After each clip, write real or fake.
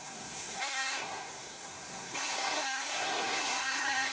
fake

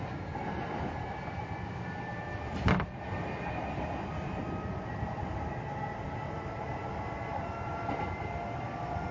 real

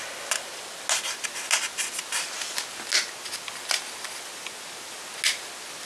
real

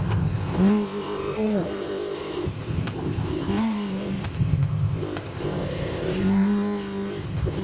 fake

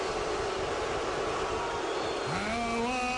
real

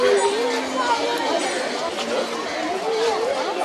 real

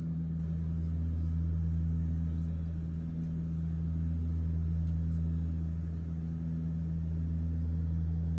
real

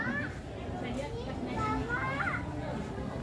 real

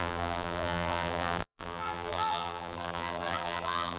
fake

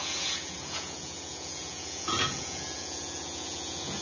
fake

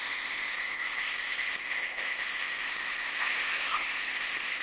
fake